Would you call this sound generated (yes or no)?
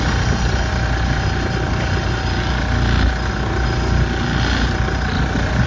no